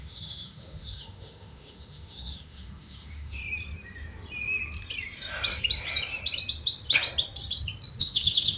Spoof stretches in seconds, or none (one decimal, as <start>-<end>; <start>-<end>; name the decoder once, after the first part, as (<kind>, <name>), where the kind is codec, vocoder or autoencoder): 0.0-3.4 (autoencoder, DAC-VAE); 8.0-8.6

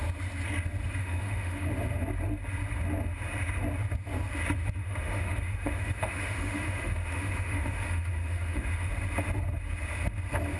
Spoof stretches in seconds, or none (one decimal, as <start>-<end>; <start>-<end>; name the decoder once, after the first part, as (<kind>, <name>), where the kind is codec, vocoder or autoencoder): 1.0-1.7 (autoencoder, DAC-VAE); 4.8-8.9

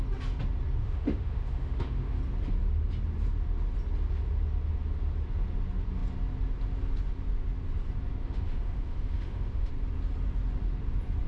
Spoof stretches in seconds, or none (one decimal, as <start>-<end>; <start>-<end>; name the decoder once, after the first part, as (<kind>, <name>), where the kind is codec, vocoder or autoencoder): 0.8-2.2 (autoencoder, DAC-VAE); 8.2-9.7

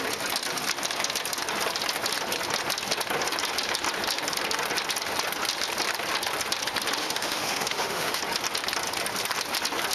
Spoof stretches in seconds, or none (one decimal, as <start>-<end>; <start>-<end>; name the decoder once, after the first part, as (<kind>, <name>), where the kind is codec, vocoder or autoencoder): 7.0-8.2 (autoencoder, DAC-VAE)

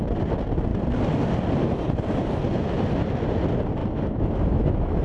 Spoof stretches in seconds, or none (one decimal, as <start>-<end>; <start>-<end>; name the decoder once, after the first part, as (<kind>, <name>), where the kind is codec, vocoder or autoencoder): 3.8-5.0 (autoencoder, DAC-VAE)

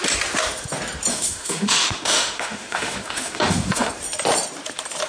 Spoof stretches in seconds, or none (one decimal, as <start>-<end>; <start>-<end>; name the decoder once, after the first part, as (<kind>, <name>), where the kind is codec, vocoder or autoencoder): 1.1-3.9 (autoencoder, DAC-VAE)

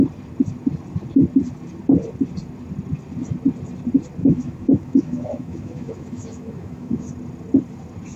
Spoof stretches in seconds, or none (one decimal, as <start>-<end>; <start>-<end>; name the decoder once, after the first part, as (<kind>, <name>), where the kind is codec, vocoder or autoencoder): 4.2-7.0 (autoencoder, DAC-VAE)